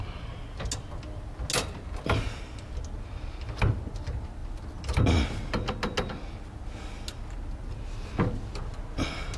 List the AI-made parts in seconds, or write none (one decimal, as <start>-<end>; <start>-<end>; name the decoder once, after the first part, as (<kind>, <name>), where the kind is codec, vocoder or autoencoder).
none